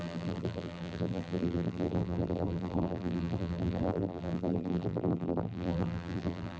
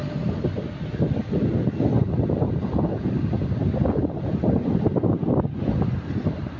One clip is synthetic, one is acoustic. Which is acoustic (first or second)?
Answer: second